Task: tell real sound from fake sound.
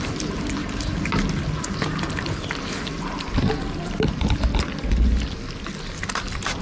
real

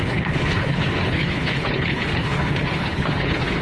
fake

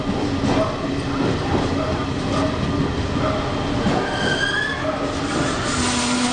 real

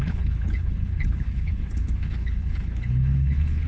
fake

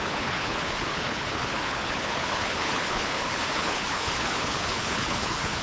fake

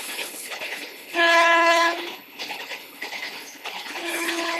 fake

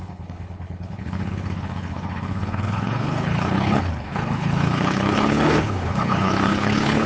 fake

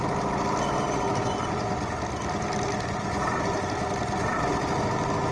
real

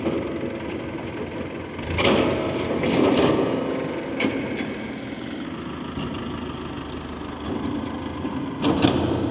real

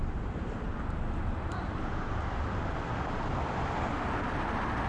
real